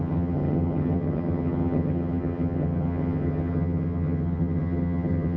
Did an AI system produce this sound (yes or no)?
yes